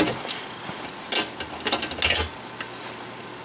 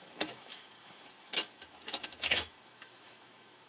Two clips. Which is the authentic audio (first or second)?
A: first